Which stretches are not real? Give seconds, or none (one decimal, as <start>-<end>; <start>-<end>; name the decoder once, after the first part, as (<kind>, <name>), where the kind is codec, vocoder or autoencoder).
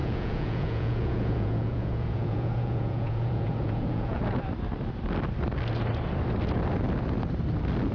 0.0-4.4 (vocoder, Vocos)